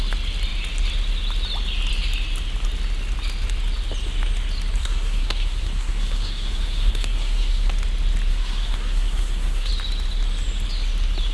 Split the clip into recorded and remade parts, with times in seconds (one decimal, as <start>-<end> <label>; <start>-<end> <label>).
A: 0.0-4.8 recorded; 4.8-7.7 remade; 7.7-8.3 recorded; 8.3-9.7 remade; 9.7-11.3 recorded